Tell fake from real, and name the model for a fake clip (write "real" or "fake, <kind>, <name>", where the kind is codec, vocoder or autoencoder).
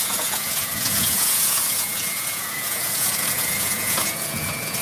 fake, vocoder, Vocos